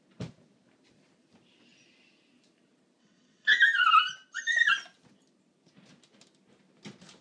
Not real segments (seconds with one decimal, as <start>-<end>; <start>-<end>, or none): 3.0-3.6